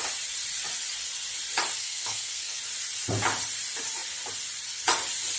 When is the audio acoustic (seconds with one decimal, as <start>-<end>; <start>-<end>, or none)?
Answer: 0.0-1.8; 2.6-5.4